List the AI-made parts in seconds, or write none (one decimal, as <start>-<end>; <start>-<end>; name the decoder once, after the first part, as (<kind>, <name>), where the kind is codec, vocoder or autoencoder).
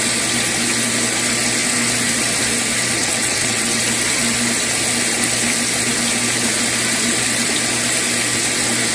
3.0-3.8 (vocoder, WaveNeXt)